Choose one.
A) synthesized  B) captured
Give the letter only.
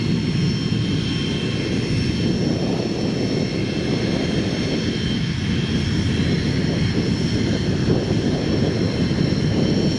B